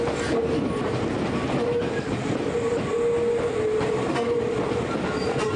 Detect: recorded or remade recorded